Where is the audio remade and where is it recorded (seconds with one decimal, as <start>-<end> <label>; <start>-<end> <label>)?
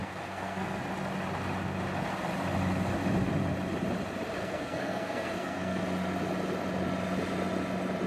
0.0-0.8 remade; 0.8-4.4 recorded; 4.4-5.8 remade; 5.8-8.1 recorded